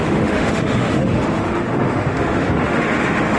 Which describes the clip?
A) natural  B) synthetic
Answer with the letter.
B